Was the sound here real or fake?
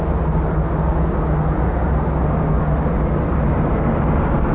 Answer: real